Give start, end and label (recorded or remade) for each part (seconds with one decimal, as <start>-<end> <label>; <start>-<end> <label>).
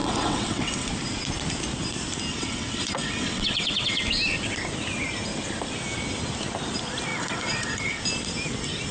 0.0-0.9 remade; 0.9-2.3 recorded; 2.3-4.0 remade; 4.0-7.1 recorded; 7.1-8.0 remade; 8.0-8.9 recorded